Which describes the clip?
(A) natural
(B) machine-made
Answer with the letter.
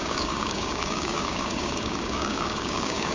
B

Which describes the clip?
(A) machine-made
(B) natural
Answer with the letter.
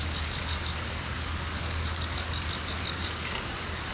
A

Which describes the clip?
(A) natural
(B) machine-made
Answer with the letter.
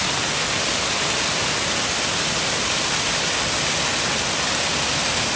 A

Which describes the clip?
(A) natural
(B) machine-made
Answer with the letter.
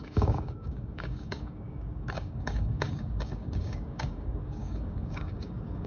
B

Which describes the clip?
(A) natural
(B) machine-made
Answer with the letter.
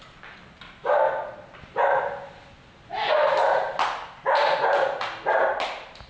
A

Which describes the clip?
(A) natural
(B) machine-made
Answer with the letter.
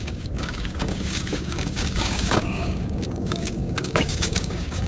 B